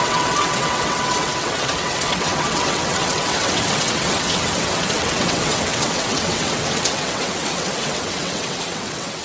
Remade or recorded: remade